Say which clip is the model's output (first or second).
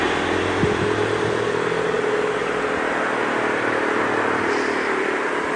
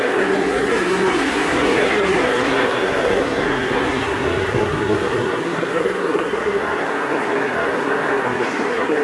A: second